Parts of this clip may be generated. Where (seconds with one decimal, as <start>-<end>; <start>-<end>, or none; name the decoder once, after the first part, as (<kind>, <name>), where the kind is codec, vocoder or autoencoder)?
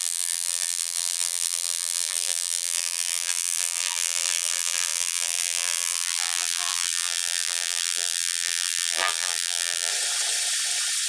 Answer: 0.0-9.9 (vocoder, BigVGAN v2)